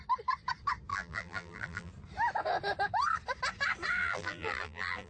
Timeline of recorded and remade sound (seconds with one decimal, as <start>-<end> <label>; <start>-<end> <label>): 0.0-0.9 recorded; 0.9-1.9 remade; 1.9-4.0 recorded; 4.0-5.1 remade